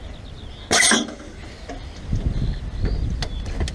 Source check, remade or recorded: recorded